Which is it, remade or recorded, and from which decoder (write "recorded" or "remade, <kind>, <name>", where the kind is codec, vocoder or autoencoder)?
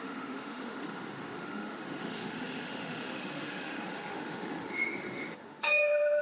remade, autoencoder, DAC-VAE